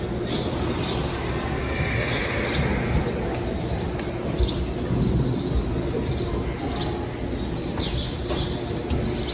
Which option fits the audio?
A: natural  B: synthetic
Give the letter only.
A